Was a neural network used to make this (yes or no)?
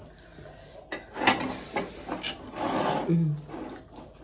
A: no